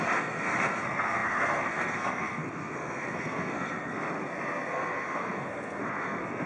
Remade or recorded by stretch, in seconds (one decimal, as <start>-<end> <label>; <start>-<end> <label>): 0.0-6.5 remade